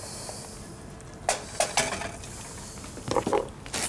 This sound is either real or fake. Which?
real